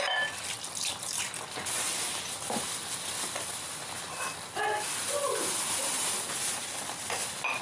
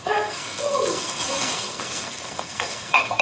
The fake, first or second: second